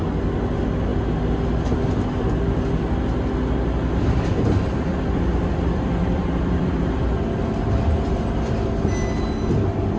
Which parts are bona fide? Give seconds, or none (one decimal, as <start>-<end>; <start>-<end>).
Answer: 0.0-4.9; 7.0-10.0